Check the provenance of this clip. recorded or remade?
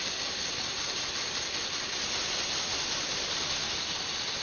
recorded